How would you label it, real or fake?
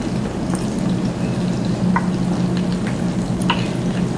real